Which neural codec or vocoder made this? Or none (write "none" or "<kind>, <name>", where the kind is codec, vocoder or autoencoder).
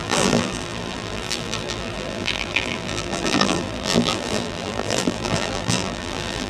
vocoder, BigVGAN v2